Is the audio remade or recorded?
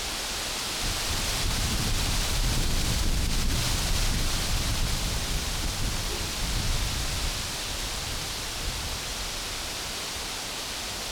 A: remade